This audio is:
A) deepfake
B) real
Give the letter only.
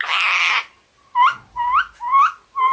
B